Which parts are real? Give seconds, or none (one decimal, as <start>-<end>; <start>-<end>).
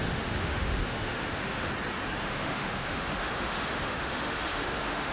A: 1.7-2.2